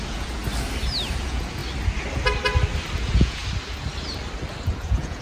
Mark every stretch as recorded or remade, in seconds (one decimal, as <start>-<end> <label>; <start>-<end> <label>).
0.0-0.4 remade; 0.4-1.1 recorded; 1.1-1.6 remade; 1.6-3.0 recorded; 3.0-3.4 remade; 3.4-4.6 recorded; 4.6-5.2 remade